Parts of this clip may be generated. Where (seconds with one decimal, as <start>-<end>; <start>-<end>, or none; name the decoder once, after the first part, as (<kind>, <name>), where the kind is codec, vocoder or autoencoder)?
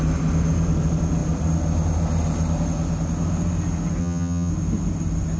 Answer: 4.0-4.5 (vocoder, HiFi-GAN)